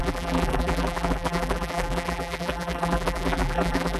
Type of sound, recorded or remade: remade